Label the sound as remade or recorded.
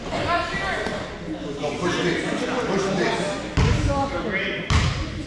recorded